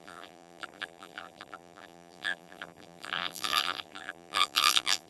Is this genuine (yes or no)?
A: no